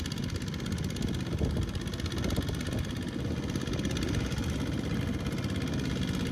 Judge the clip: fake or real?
real